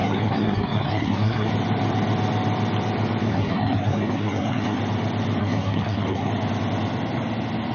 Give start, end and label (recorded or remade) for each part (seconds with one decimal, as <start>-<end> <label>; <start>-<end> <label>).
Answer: 0.0-1.5 remade; 1.5-3.3 recorded; 3.3-4.8 remade; 4.8-5.4 recorded; 5.4-6.3 remade; 6.3-7.7 recorded